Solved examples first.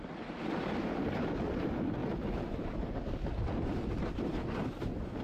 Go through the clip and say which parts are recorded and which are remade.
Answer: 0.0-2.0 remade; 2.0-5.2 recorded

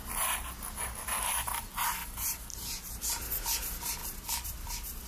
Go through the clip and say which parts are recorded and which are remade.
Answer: 0.0-4.0 recorded; 4.0-5.1 remade

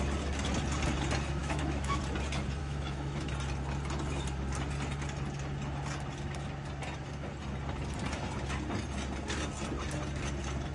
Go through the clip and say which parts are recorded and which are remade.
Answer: 0.0-1.4 recorded; 1.4-2.0 remade; 2.0-2.6 recorded; 2.6-3.3 remade; 3.3-10.7 recorded

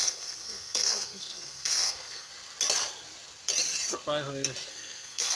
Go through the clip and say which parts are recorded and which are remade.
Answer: 0.0-2.3 remade; 2.3-4.7 recorded; 4.7-5.4 remade

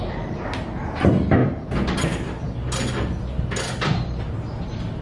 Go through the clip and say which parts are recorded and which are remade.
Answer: 0.0-5.0 recorded